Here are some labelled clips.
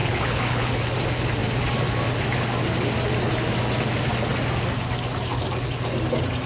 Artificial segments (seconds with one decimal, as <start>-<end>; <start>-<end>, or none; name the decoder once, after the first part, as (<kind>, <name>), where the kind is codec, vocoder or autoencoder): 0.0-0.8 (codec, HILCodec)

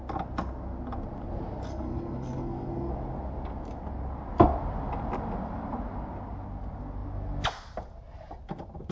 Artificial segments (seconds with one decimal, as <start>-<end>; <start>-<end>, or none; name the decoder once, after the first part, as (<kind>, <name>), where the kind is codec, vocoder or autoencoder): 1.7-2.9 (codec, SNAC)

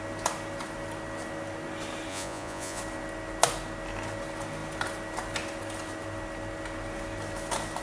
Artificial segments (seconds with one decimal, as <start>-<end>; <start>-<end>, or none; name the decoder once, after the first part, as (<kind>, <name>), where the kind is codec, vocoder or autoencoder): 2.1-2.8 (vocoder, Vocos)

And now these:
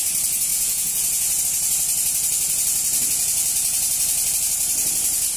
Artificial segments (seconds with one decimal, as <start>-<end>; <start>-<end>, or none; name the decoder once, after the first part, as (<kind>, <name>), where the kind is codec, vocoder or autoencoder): 0.5-1.4 (vocoder, Vocos)

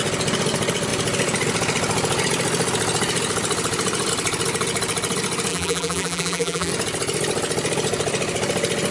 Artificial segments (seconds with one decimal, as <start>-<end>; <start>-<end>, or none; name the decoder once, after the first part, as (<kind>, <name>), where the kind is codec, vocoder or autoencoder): 5.5-6.7 (vocoder, BigVGAN v2)